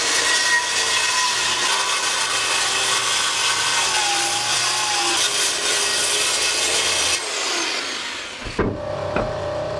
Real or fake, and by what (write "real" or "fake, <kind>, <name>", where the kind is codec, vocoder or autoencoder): real